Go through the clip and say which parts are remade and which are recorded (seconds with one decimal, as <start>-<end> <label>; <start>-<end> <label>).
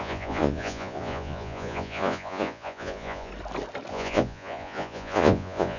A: 0.0-3.3 remade; 3.3-3.9 recorded; 3.9-5.8 remade